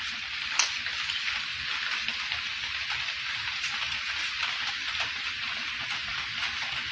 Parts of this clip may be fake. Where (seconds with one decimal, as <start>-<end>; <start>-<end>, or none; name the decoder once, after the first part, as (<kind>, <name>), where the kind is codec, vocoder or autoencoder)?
none